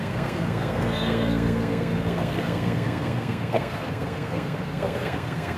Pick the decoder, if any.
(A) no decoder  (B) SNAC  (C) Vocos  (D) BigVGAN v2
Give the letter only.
B